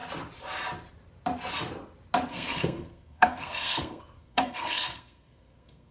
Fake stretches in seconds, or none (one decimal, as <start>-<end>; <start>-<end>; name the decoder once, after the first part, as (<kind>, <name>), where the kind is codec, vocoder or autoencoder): 2.3-5.9 (codec, SNAC)